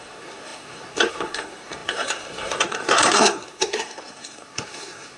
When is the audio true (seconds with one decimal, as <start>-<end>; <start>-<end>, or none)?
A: none